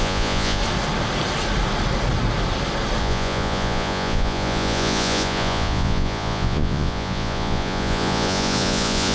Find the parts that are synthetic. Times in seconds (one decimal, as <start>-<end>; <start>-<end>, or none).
0.0-0.6; 3.0-9.1